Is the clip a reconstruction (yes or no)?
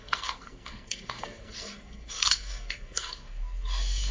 yes